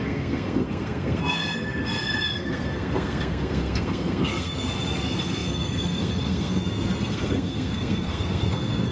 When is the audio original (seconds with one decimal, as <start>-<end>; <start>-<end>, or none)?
none